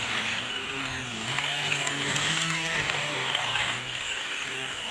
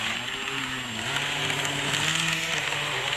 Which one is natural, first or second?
second